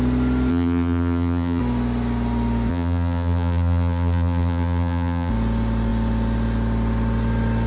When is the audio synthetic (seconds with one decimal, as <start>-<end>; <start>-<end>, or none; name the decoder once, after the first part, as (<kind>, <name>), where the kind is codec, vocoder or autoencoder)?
0.5-1.6 (vocoder, BigVGAN v2); 2.7-5.3